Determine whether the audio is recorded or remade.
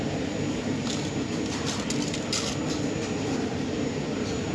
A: recorded